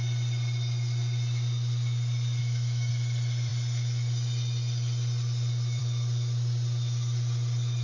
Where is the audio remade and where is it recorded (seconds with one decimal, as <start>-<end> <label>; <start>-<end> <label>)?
0.0-2.4 recorded; 2.4-2.9 remade; 2.9-7.8 recorded